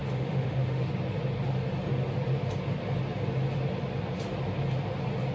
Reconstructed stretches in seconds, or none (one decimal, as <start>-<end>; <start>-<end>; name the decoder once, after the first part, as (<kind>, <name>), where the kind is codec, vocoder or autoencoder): 0.0-0.9 (autoencoder, DAC-VAE)